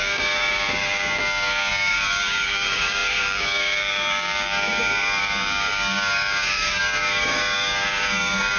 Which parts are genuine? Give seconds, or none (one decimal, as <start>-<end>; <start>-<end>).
none